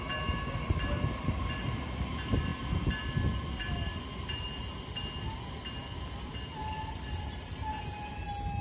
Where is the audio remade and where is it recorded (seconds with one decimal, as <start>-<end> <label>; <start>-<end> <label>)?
0.0-8.6 recorded